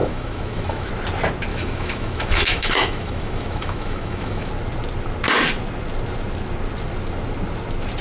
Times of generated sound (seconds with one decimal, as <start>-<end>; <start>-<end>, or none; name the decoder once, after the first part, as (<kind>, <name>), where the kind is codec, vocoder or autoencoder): 0.0-0.9 (autoencoder, DAC-VAE); 1.5-4.5